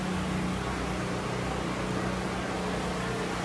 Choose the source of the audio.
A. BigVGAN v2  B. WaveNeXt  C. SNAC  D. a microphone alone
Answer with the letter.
D